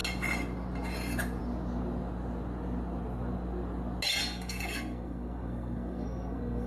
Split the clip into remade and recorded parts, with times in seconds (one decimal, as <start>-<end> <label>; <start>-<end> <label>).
0.0-4.2 recorded; 4.2-6.7 remade